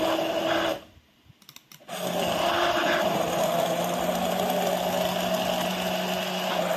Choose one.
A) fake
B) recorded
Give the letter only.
B